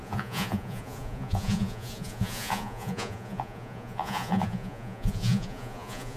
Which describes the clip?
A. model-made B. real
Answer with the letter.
A